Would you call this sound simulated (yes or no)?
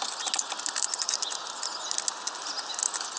no